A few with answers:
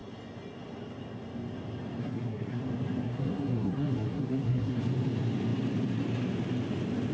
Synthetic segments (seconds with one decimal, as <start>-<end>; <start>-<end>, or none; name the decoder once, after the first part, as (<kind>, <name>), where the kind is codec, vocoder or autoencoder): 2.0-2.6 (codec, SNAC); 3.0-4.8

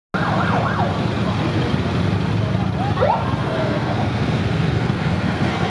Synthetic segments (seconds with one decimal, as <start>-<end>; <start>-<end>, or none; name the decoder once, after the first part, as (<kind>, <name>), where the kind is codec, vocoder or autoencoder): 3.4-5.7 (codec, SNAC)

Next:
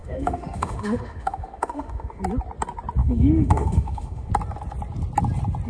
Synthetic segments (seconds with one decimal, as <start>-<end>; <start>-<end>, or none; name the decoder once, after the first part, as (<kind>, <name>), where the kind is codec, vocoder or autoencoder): 0.0-2.2 (autoencoder, DAC-VAE); 3.0-4.3